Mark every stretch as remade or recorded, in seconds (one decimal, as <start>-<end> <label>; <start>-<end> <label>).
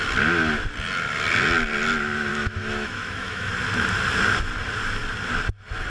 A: 0.0-2.3 recorded; 2.3-3.5 remade; 3.5-5.9 recorded